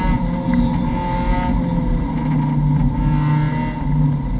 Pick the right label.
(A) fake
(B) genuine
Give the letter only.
B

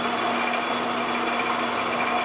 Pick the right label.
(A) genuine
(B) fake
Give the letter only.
A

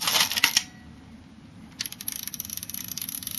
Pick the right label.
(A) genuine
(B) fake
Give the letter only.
A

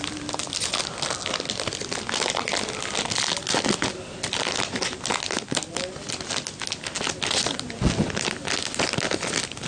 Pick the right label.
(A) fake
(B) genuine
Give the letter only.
B